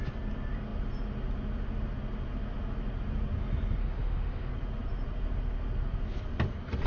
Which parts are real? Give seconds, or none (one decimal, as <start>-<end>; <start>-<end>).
0.0-3.8; 4.5-6.9